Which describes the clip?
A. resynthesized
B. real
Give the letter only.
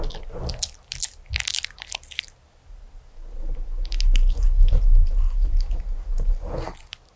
B